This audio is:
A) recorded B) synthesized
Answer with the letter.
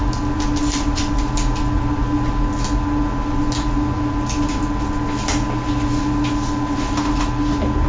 A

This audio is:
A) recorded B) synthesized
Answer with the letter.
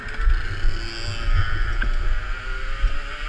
A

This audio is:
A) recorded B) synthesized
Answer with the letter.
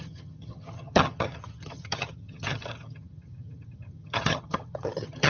B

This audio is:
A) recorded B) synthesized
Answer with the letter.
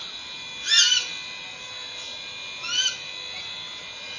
A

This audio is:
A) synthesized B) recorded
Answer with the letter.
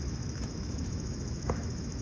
A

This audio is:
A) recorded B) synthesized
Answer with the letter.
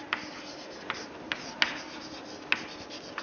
A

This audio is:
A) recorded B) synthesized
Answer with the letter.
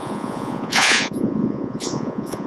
B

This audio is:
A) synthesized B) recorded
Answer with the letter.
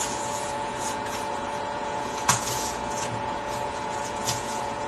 A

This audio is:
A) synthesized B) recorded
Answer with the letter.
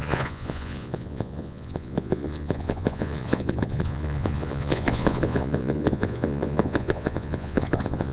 A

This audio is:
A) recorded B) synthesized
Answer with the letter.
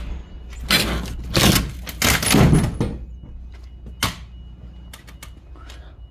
A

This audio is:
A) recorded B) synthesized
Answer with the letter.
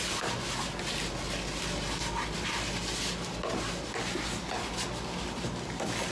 A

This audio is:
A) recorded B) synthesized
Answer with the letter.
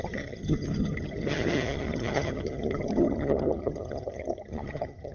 B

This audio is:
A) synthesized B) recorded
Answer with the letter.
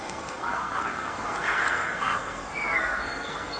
A